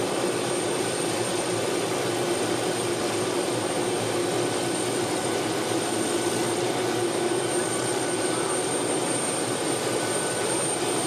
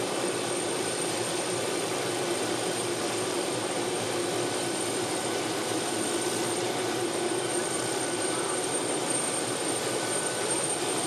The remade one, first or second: second